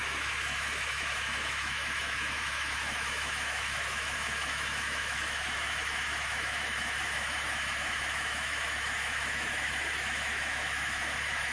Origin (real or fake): fake